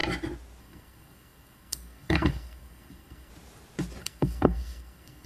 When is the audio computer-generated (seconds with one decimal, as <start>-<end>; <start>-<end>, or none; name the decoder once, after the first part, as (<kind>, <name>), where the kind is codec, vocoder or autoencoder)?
0.6-3.3 (codec, SNAC); 4.0-5.3